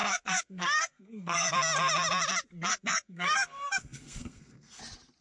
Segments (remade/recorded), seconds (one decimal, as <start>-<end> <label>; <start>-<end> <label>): 0.0-1.5 remade; 1.5-2.7 recorded; 2.7-4.8 remade; 4.8-5.2 recorded